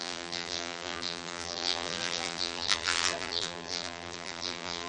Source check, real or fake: fake